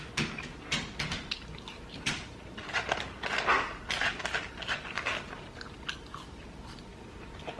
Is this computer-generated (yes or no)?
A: no